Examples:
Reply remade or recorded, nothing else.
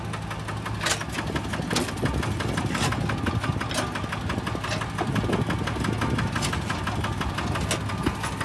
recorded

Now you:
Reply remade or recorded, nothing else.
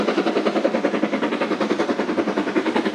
recorded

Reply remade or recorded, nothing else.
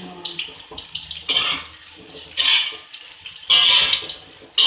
recorded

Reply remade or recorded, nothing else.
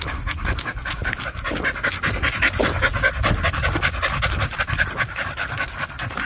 recorded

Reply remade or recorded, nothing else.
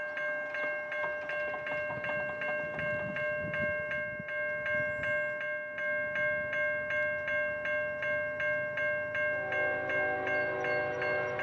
recorded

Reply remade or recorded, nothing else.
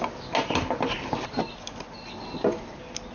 recorded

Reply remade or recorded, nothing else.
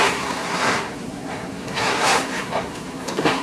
remade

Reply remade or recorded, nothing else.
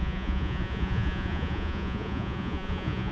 remade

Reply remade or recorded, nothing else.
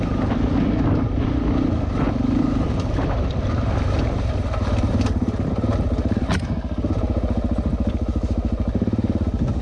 recorded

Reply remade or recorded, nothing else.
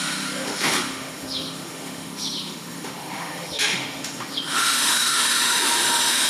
remade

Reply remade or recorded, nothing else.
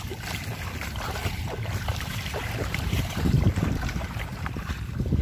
remade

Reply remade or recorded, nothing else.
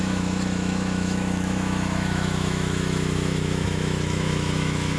remade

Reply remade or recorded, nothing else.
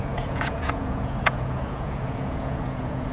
remade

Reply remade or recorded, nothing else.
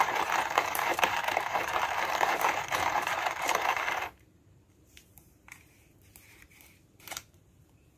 remade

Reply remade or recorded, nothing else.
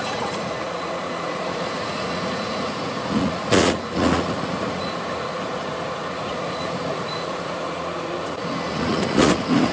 remade